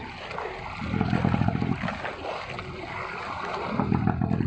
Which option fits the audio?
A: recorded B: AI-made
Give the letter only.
A